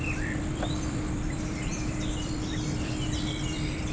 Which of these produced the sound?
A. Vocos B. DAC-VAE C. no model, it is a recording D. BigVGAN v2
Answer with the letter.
D